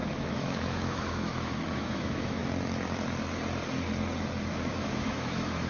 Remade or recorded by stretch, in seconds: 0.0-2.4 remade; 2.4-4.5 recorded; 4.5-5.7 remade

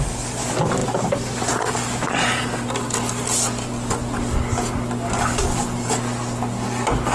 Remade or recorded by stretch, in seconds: 0.0-7.1 recorded

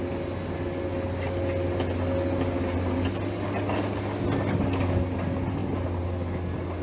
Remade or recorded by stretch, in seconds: 0.0-6.8 recorded

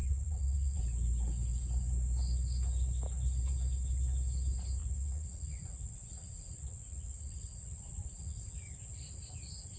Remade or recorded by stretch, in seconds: 0.0-0.8 remade; 0.8-4.8 recorded; 4.8-8.5 remade; 8.5-9.8 recorded

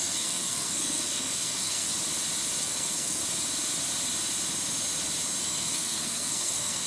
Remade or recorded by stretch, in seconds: 0.0-1.9 remade; 1.9-2.6 recorded; 2.6-3.2 remade; 3.2-5.4 recorded; 5.4-6.9 remade